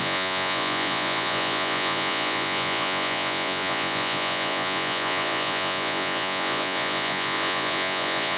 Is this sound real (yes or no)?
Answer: no